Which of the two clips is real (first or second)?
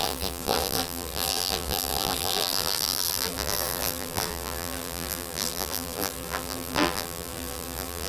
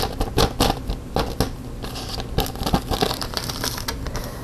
second